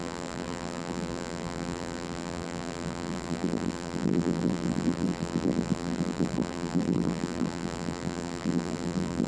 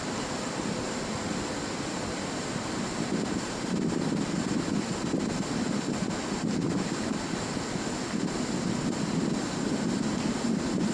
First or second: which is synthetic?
first